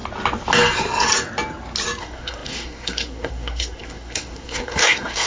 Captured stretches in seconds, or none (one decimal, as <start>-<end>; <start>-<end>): 0.0-2.0